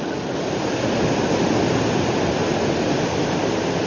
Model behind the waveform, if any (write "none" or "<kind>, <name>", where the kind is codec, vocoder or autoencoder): none